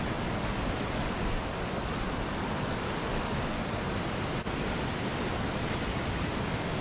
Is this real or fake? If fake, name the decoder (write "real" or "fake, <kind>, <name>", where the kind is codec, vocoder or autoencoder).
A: real